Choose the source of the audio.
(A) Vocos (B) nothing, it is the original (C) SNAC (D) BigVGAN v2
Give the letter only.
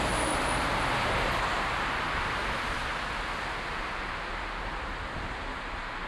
B